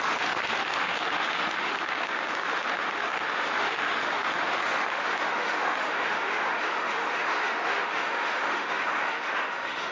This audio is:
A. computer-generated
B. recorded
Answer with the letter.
A